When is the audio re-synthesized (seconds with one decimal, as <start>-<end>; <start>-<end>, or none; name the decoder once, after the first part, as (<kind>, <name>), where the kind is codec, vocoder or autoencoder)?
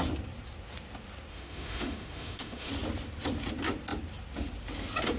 1.3-2.7 (autoencoder, DAC-VAE)